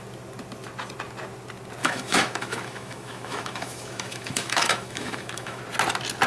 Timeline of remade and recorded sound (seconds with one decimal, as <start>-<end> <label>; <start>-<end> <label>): 0.0-1.8 recorded; 1.8-5.6 remade; 5.6-6.3 recorded